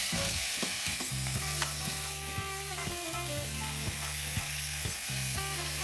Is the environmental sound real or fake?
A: fake